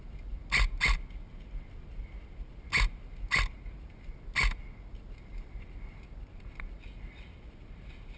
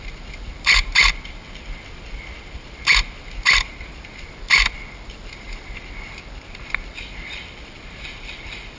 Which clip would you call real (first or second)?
first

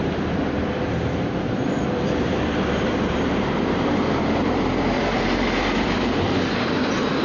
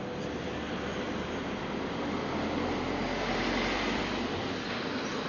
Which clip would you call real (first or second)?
second